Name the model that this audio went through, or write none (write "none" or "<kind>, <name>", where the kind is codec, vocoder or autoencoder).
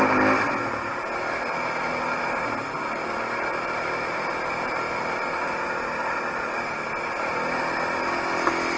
none